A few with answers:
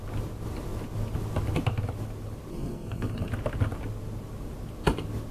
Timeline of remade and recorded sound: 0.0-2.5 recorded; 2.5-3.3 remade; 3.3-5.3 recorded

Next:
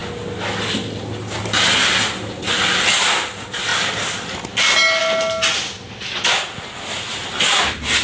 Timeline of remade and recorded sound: 0.0-8.0 recorded

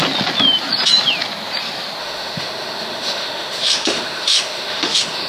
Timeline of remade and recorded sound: 0.0-2.0 recorded; 2.0-5.3 remade

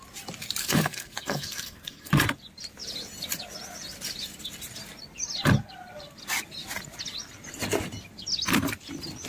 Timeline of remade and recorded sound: 0.0-0.6 recorded; 0.6-2.1 remade; 2.1-9.3 recorded